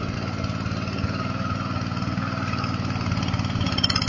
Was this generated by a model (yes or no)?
no